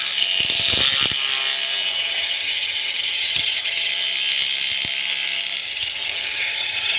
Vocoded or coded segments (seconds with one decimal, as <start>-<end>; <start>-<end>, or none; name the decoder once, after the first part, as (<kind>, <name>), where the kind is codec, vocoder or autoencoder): 1.9-3.9 (vocoder, HiFi-GAN); 5.6-7.0